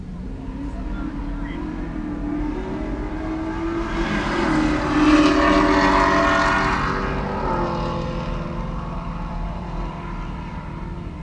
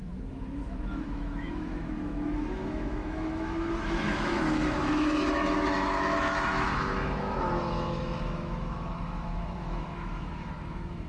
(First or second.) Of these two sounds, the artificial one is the second